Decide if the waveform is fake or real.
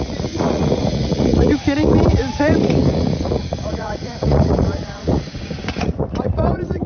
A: fake